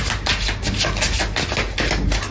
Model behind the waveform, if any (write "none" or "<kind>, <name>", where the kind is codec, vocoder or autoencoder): none